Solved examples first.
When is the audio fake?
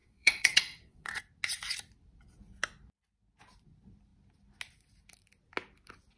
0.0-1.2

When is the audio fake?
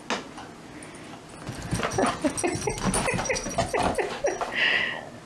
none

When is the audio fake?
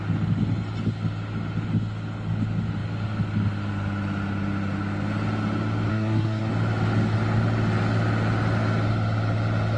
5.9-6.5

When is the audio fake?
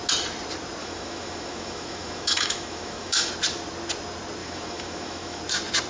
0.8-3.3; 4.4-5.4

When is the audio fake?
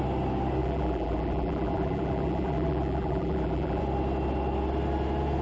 0.6-3.8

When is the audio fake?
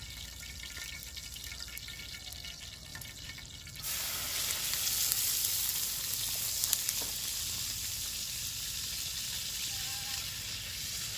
none